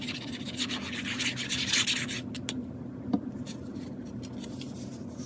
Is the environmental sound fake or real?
real